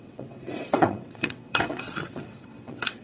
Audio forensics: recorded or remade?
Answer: remade